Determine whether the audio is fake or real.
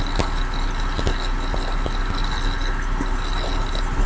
real